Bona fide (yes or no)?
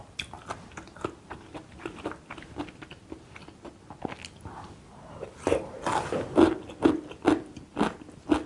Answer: yes